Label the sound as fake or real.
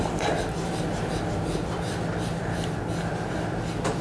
real